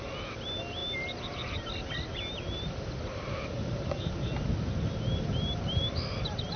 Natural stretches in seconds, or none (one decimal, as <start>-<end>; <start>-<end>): 0.0-6.6